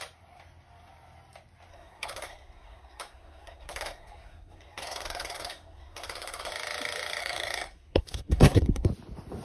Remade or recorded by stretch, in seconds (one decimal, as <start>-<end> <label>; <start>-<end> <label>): 0.0-1.7 recorded; 1.7-6.5 remade; 6.5-7.2 recorded; 7.2-8.9 remade; 8.9-9.4 recorded